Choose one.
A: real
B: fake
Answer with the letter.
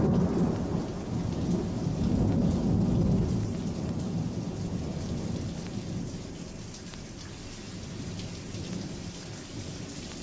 A